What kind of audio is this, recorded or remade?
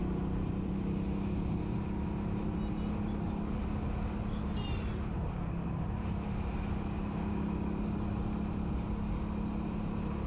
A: recorded